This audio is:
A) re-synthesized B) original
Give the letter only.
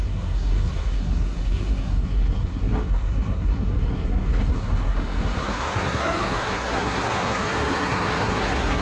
A